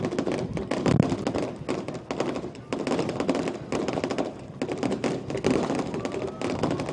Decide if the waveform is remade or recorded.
recorded